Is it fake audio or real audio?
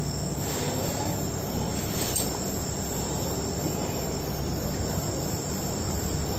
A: real